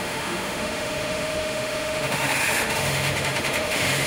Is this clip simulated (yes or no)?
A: yes